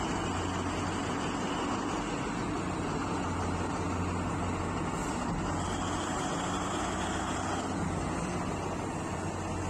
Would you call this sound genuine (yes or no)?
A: yes